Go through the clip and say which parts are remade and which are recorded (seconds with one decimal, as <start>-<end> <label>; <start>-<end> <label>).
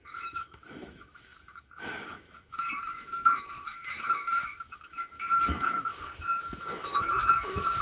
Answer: 0.0-7.8 remade